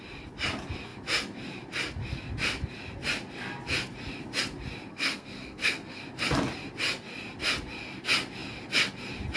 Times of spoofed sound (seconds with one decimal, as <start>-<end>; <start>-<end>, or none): 4.9-6.0